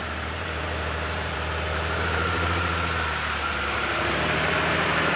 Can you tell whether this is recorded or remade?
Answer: remade